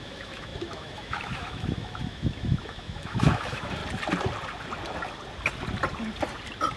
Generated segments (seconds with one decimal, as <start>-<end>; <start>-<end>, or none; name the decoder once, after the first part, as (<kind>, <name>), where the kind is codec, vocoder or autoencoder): 0.0-3.8 (autoencoder, DAC-VAE)